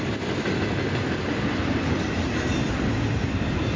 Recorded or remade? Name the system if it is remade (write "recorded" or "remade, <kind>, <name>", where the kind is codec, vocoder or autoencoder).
recorded